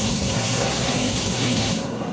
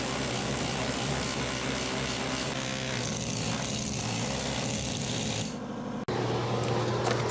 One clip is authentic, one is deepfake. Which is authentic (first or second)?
second